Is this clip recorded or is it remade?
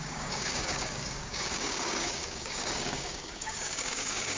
remade